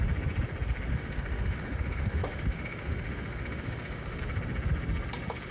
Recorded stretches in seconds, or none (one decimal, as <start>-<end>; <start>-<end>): 0.0-0.9; 4.2-5.5